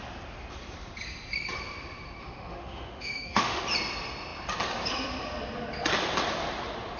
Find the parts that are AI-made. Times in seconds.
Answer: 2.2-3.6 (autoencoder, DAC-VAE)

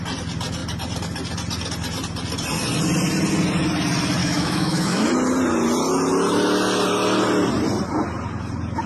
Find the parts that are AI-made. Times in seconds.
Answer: 4.2-5.1 (autoencoder, DAC-VAE)